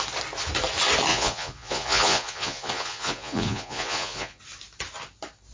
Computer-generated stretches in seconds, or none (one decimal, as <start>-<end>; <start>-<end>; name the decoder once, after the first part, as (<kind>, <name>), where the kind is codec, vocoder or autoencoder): 1.1-4.4 (vocoder, Vocos)